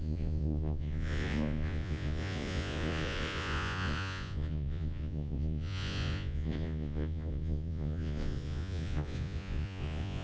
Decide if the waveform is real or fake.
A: fake